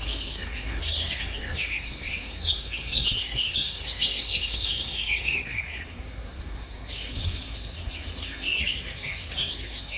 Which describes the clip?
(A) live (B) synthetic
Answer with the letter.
B